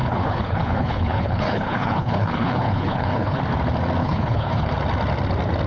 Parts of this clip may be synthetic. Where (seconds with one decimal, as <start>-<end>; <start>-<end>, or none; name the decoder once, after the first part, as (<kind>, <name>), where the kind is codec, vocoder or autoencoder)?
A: 0.0-3.4 (codec, HILCodec); 4.0-4.7